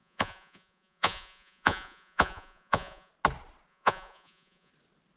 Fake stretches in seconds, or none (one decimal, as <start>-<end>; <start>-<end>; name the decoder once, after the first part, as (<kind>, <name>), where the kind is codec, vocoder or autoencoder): 0.0-3.1 (vocoder, Vocos); 3.7-4.7